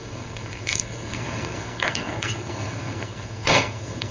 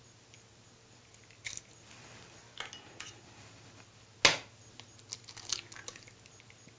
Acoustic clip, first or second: second